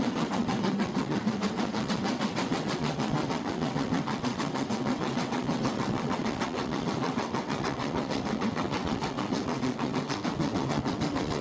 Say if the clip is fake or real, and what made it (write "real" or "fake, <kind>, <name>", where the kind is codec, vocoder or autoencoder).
fake, vocoder, WaveNeXt